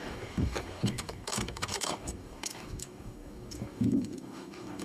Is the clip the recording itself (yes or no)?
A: no